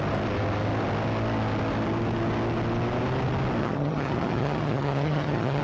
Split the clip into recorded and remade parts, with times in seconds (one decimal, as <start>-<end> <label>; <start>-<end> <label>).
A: 0.0-3.6 recorded; 3.6-5.6 remade